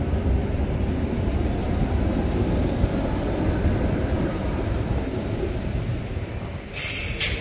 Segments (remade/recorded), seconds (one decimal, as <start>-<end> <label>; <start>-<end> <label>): 0.0-0.4 recorded; 0.4-2.9 remade; 2.9-4.3 recorded; 4.3-6.3 remade; 6.3-7.4 recorded